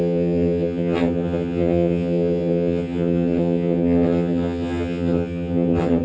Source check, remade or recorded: remade